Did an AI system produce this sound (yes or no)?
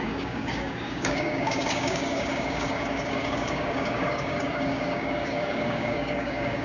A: yes